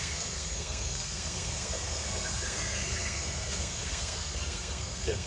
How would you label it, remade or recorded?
remade